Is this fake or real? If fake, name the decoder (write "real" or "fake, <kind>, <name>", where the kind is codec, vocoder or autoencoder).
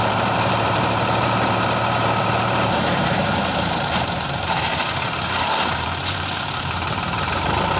fake, vocoder, BigVGAN v2